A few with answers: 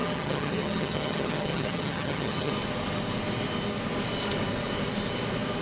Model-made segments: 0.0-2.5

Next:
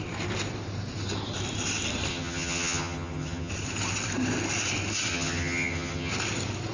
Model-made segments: 2.1-3.5; 5.1-6.1

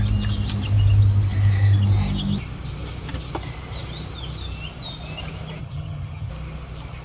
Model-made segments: 5.6-6.3

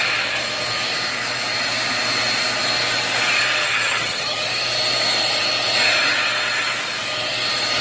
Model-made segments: 3.6-4.4

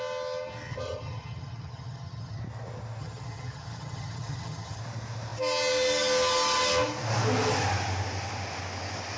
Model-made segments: 0.7-2.4; 3.0-4.8

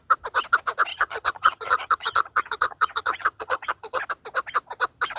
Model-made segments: 0.9-4.0

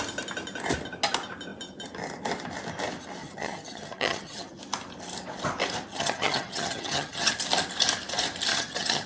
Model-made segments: 3.2-4.6; 5.9-7.3; 8.5-9.1

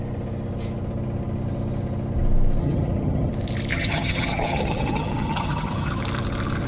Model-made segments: 2.6-3.3; 3.7-6.0